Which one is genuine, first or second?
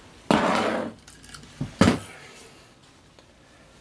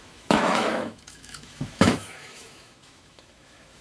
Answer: first